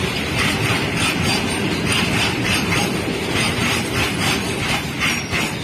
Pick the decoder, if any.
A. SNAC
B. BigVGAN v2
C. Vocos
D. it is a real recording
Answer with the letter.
D